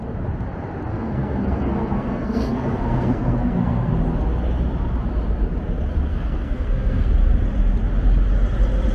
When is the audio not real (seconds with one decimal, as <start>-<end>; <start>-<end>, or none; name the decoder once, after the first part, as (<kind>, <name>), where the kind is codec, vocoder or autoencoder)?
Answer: 0.9-3.9 (codec, SNAC); 6.1-7.1

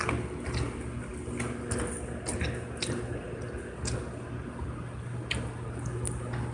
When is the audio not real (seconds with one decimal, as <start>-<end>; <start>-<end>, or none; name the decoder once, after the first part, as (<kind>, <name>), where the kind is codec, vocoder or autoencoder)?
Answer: none

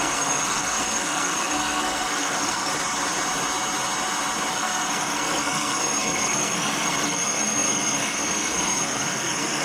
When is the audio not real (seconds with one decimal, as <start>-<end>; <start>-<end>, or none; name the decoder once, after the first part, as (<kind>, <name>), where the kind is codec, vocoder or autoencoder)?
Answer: 0.0-2.7 (codec, SNAC); 4.5-9.6

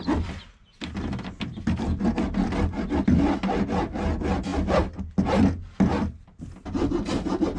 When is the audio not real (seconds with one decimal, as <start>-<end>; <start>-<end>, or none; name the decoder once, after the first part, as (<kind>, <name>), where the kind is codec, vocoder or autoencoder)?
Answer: none

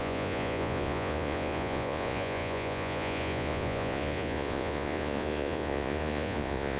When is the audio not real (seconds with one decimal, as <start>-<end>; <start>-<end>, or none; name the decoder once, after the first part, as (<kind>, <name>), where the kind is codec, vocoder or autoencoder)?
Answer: 0.0-6.8 (vocoder, Vocos)

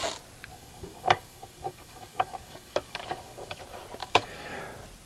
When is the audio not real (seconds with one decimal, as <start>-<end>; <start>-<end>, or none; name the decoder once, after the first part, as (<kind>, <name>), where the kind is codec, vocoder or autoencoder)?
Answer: 0.5-3.6 (codec, DAC); 4.0-4.6

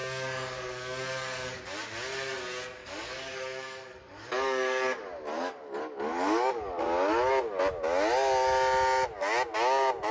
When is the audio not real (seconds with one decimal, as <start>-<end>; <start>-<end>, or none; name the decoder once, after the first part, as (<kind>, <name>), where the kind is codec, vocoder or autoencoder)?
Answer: 0.0-1.6 (codec, DAC); 2.8-7.3

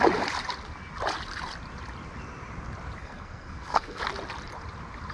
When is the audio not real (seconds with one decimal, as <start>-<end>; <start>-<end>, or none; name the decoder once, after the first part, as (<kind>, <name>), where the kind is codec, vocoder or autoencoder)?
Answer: 3.0-4.0 (codec, SNAC)